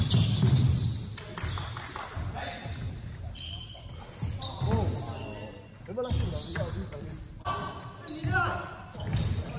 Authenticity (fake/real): real